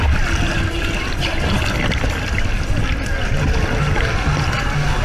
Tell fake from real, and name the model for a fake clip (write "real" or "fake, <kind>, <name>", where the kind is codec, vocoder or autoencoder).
real